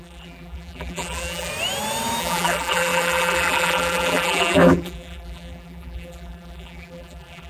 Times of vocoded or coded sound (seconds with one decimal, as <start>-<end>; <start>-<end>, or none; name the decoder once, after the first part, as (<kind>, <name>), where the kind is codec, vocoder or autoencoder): 0.0-1.5 (vocoder, BigVGAN v2); 2.2-7.5